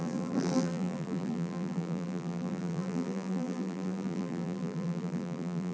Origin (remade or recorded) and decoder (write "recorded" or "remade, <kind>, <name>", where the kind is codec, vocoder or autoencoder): remade, vocoder, BigVGAN v2